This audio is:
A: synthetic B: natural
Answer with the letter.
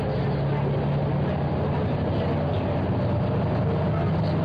B